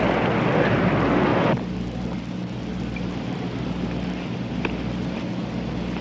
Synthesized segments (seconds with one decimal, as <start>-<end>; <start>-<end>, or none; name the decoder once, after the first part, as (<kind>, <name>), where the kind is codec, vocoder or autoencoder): none

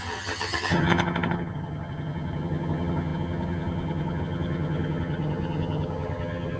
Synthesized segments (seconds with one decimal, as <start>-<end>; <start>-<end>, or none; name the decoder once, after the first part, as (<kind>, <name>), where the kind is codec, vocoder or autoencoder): 0.0-6.6 (vocoder, HiFi-GAN)

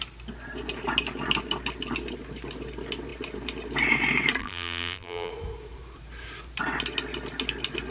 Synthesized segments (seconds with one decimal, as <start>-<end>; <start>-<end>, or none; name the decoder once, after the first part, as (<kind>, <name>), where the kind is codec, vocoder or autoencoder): 4.4-5.3 (vocoder, BigVGAN v2)

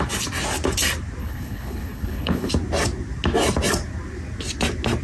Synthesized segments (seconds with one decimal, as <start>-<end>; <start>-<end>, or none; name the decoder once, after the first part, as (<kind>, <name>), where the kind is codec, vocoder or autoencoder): 1.2-2.5 (codec, HILCodec)

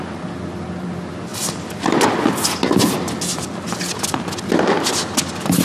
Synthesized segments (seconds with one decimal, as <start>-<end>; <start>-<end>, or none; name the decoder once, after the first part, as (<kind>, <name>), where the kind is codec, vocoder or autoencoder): none

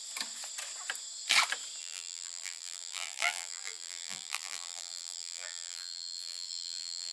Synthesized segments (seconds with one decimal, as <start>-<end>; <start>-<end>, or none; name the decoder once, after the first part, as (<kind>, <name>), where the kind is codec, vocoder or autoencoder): 1.8-7.1 (vocoder, BigVGAN v2)

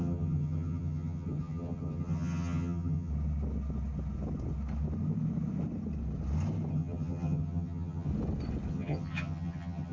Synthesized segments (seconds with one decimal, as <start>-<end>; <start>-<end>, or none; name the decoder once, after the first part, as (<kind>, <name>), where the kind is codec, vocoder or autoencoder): 0.0-3.1 (vocoder, HiFi-GAN); 6.7-8.1; 8.7-9.9